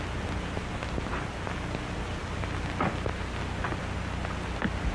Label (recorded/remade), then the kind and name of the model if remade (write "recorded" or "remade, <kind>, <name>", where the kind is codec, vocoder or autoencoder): recorded